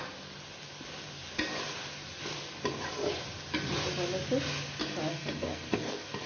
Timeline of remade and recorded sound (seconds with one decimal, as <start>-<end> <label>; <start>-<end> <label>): 0.0-5.1 recorded; 5.1-6.3 remade

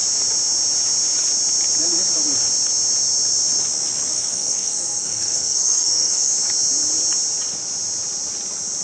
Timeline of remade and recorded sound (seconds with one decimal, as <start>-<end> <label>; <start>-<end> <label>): 0.0-4.1 recorded; 4.1-6.3 remade; 6.3-8.8 recorded

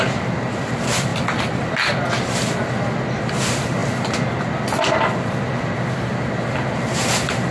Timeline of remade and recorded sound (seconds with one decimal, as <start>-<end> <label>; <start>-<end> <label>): 0.0-7.5 recorded

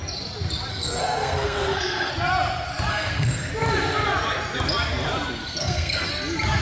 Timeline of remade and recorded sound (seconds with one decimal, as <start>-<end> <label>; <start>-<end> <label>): 0.0-0.7 recorded; 0.7-2.1 remade; 2.1-2.9 recorded; 2.9-3.5 remade; 3.5-5.4 recorded; 5.4-6.1 remade; 6.1-6.6 recorded